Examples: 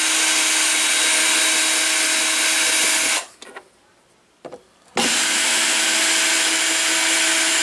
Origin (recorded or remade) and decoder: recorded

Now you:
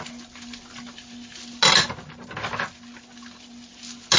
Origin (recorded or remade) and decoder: recorded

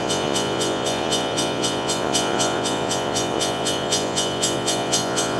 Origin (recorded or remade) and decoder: remade, vocoder, Vocos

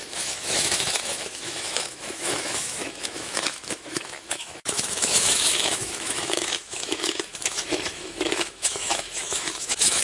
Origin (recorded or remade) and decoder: remade, autoencoder, DAC-VAE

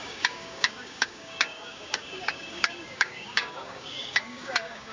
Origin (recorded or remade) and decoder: remade, codec, DAC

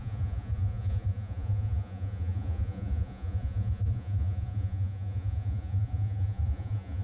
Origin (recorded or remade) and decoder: remade, vocoder, Vocos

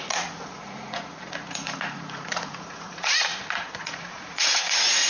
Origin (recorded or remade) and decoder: remade, vocoder, Vocos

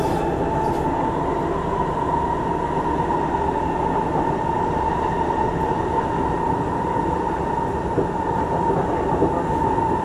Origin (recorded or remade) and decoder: recorded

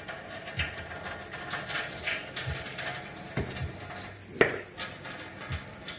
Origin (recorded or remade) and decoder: recorded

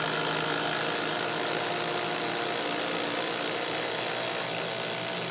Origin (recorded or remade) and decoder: recorded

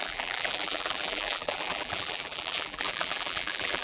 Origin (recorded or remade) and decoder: remade, vocoder, BigVGAN v2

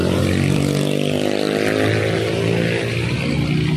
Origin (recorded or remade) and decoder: recorded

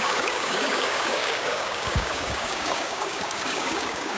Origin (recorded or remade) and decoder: remade, codec, DAC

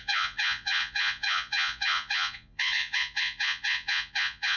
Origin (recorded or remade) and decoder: remade, vocoder, Vocos